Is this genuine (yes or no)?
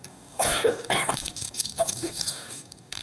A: no